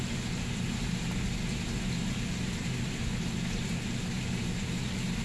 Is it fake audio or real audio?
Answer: real